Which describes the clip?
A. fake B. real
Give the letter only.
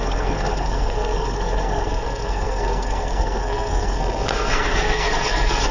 A